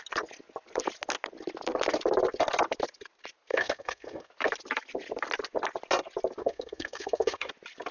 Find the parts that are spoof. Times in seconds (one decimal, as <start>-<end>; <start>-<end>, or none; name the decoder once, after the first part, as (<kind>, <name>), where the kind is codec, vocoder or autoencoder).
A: 3.5-4.3 (codec, SNAC); 6.4-7.5